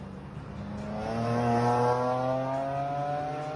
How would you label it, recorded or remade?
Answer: recorded